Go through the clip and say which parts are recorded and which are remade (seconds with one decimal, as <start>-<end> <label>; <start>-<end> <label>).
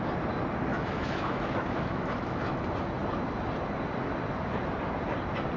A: 0.0-0.7 recorded; 0.7-2.6 remade; 2.6-5.6 recorded